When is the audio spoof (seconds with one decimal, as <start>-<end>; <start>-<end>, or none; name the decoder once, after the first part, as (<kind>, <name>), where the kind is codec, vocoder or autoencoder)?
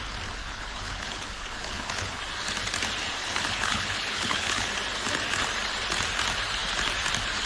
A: 0.4-2.2 (codec, HILCodec); 3.2-4.7